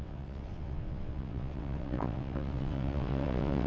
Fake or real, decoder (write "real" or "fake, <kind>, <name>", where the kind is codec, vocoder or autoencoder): fake, vocoder, WaveNeXt